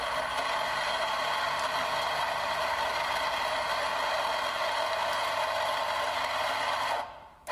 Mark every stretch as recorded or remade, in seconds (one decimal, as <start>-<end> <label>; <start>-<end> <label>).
0.0-7.5 recorded